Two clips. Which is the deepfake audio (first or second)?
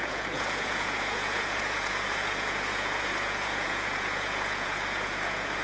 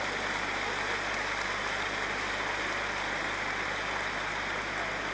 first